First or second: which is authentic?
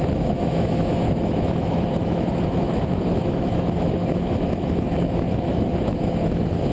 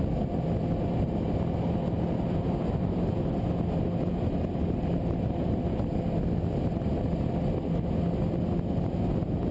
second